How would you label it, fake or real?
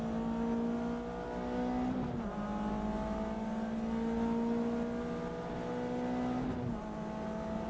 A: real